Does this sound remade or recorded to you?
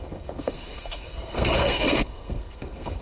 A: remade